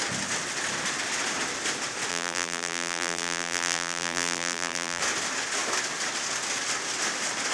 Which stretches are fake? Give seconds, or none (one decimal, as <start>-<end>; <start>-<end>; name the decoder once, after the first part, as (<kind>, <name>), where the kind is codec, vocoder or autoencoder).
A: 2.1-5.0 (vocoder, BigVGAN v2)